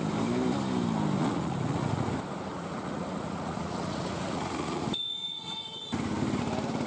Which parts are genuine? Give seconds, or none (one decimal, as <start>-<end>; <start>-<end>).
0.0-1.2; 2.1-2.5; 5.9-6.9